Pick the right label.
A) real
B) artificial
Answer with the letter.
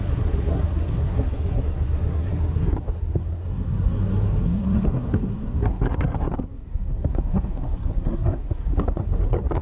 B